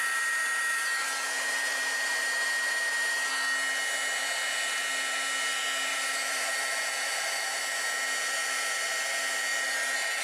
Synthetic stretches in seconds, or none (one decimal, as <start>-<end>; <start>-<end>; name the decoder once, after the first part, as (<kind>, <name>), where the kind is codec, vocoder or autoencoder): 0.0-3.3 (vocoder, BigVGAN v2); 5.9-7.6; 9.5-10.2